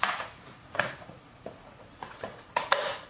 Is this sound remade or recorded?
remade